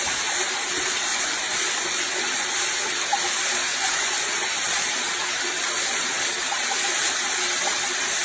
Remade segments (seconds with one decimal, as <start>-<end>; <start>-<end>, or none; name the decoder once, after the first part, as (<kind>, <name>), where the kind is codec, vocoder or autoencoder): 1.1-2.5 (vocoder, Vocos); 3.7-4.7